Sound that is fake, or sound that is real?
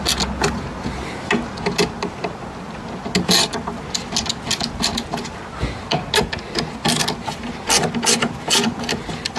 real